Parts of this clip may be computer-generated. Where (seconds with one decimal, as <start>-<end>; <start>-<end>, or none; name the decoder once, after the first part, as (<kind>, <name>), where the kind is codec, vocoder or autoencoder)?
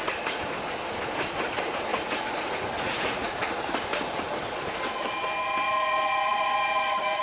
1.9-3.7 (vocoder, Vocos)